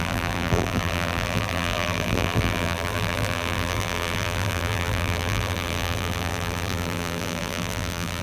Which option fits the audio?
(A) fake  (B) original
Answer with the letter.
A